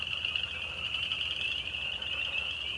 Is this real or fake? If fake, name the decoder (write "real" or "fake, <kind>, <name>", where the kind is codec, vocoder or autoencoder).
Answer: real